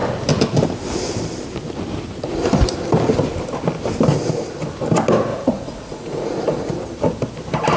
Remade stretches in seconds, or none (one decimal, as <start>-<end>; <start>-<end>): 5.3-6.7

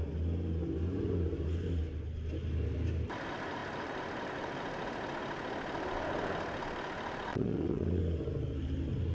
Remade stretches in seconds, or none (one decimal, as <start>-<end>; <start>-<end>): 7.3-8.0

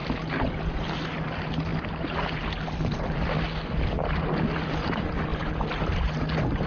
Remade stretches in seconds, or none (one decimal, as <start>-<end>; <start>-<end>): none

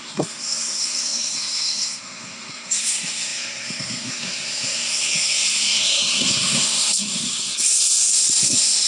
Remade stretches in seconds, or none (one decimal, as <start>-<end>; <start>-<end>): 0.0-8.9